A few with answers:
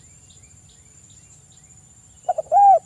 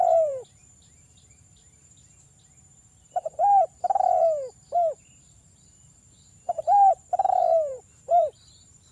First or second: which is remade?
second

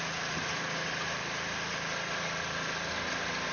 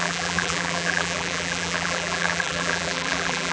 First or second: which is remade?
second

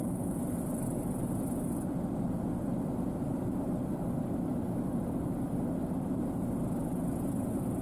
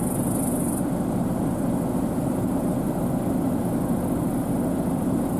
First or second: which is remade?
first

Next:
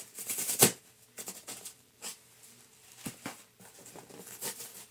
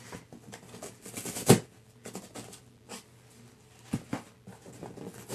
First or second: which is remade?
first